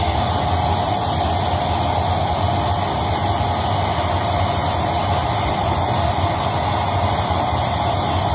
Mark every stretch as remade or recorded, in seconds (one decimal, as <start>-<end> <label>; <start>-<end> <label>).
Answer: 0.0-8.3 recorded